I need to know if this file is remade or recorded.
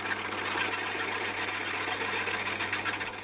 recorded